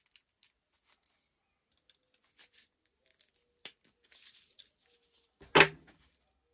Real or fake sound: real